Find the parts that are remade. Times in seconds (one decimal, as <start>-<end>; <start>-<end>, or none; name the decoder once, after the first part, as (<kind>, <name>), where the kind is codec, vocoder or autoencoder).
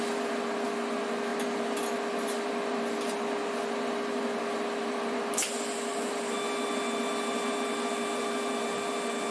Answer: none